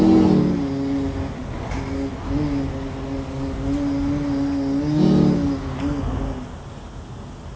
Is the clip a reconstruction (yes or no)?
no